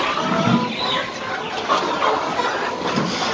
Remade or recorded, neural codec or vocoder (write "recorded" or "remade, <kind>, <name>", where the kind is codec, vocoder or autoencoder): recorded